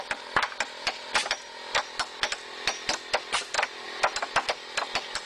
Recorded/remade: recorded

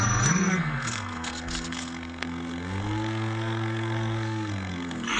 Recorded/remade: remade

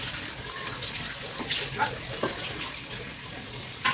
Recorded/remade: recorded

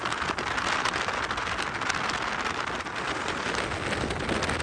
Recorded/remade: recorded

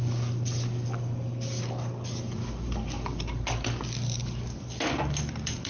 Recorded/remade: recorded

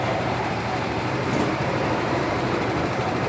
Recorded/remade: remade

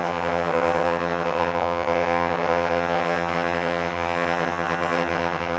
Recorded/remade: remade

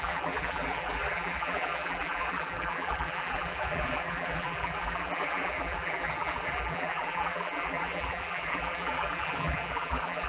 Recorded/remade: remade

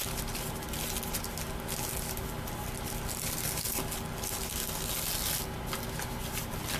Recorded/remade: recorded